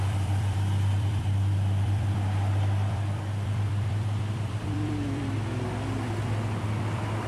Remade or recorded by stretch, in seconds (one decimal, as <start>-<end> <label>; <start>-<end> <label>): 0.0-5.2 remade; 5.2-5.9 recorded; 5.9-7.3 remade